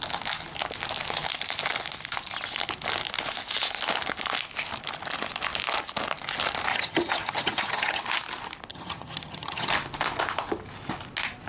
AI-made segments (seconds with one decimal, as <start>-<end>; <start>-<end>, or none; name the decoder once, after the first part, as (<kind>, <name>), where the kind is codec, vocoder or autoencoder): 6.7-8.0 (vocoder, HiFi-GAN); 8.7-9.7